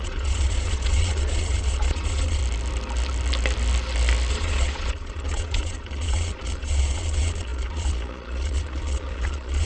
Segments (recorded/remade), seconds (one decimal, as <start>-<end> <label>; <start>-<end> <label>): 0.0-2.4 remade; 2.4-4.3 recorded; 4.3-9.6 remade